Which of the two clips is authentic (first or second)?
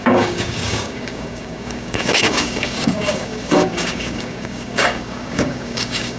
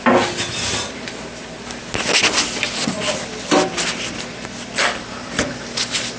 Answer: second